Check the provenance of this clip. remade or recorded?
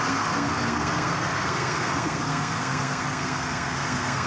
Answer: remade